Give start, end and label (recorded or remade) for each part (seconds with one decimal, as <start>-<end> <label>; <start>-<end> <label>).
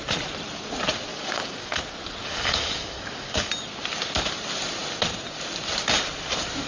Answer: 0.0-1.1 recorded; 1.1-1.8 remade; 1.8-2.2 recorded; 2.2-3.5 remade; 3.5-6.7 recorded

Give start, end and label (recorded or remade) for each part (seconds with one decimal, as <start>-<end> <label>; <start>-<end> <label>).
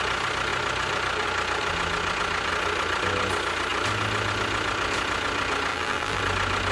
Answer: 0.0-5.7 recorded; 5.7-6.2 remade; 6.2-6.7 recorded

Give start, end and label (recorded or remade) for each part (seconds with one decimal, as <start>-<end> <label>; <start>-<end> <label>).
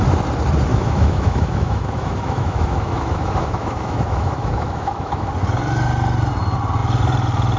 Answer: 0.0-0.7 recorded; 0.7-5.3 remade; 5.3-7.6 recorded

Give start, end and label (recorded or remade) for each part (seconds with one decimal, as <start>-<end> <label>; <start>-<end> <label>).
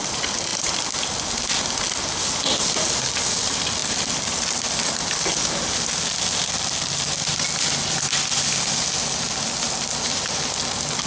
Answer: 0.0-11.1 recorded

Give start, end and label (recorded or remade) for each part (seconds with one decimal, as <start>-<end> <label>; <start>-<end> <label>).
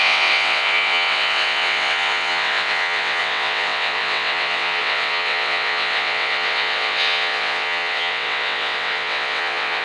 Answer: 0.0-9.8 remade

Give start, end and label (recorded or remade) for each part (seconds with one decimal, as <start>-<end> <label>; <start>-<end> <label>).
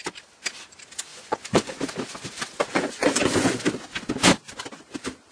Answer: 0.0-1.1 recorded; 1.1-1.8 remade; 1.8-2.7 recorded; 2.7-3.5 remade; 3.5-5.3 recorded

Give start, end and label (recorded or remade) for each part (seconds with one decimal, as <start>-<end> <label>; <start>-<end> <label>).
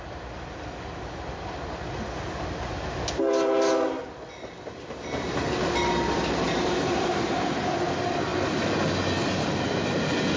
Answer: 0.0-10.4 recorded